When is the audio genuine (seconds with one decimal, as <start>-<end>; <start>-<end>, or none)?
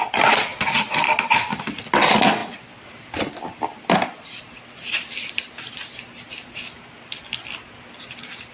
0.0-2.4; 6.3-8.5